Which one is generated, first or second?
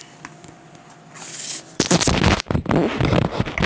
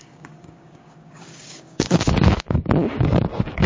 second